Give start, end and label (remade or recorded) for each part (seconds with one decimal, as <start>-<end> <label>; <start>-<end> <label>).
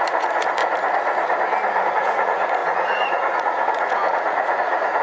0.0-0.6 remade; 0.6-1.9 recorded; 1.9-5.0 remade